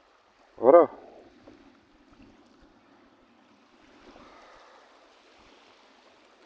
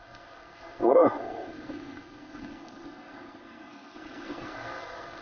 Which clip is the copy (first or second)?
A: second